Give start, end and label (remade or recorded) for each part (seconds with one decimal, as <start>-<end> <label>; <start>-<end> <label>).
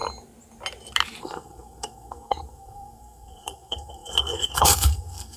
0.0-1.2 recorded; 1.2-5.4 remade